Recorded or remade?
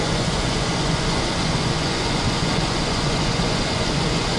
remade